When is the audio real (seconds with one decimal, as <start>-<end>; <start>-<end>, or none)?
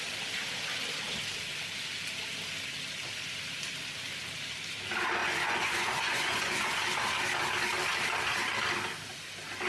0.0-5.2; 6.8-9.7